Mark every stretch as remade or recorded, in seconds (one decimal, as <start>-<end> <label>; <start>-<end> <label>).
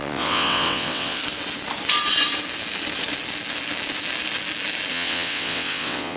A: 0.0-1.2 remade; 1.2-4.9 recorded; 4.9-6.2 remade